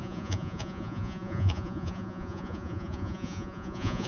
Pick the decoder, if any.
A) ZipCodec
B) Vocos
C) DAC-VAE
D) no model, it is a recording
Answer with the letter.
B